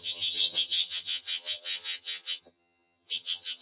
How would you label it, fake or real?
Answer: fake